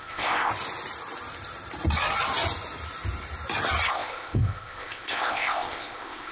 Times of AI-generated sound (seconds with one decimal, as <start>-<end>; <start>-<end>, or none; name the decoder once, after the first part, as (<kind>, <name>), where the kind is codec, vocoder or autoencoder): 0.0-0.5 (codec, ZipCodec); 3.9-6.3